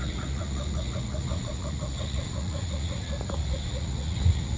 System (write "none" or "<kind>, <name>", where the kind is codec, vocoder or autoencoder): vocoder, Vocos